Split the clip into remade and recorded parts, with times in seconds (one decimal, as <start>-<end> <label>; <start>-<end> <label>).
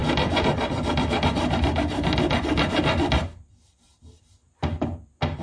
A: 0.0-5.4 recorded